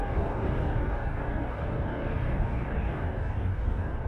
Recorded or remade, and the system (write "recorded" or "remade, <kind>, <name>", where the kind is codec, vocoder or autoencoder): remade, codec, DAC